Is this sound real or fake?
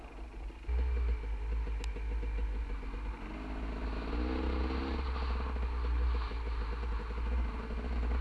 real